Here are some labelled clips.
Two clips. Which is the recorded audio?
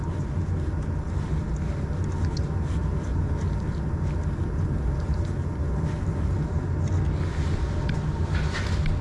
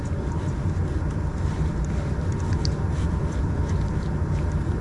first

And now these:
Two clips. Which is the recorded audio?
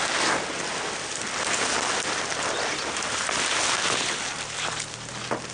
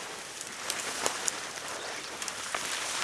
first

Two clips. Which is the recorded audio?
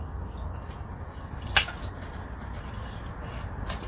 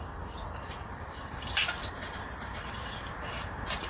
first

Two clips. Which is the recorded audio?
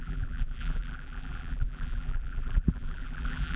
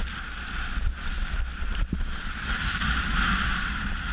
second